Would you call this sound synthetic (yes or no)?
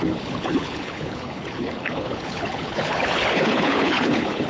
yes